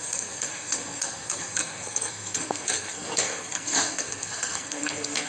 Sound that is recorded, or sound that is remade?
remade